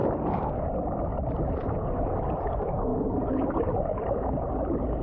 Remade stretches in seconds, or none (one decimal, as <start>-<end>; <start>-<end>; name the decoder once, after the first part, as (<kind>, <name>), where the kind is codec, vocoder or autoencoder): 0.6-5.0 (vocoder, BigVGAN v2)